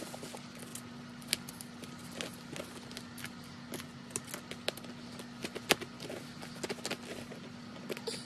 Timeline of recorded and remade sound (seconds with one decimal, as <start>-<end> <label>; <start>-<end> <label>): 0.0-8.3 recorded